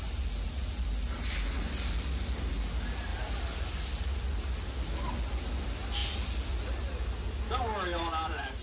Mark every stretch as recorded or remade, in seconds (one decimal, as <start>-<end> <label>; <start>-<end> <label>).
0.0-8.6 recorded